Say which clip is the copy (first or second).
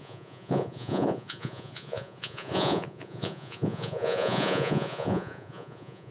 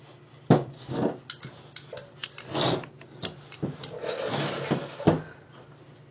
first